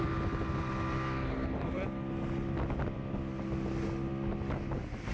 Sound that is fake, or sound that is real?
real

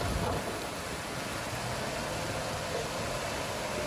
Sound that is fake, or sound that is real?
real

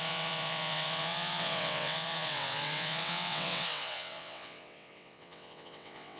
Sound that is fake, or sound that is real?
fake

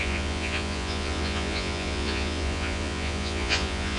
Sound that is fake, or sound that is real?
fake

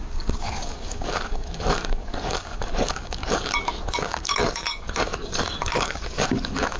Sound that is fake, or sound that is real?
fake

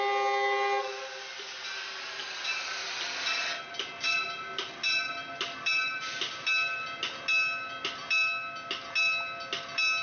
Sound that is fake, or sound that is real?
real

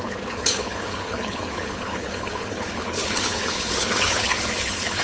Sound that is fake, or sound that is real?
fake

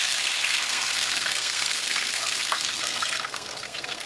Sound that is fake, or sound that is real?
fake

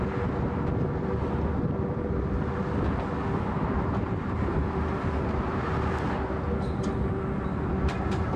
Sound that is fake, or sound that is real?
real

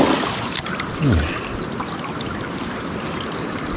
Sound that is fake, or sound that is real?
real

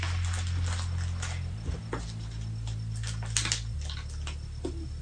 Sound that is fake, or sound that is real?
real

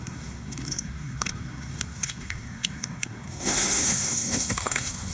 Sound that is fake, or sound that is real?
fake